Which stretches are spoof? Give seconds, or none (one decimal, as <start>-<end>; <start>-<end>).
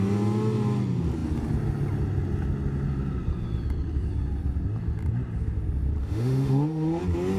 6.0-7.0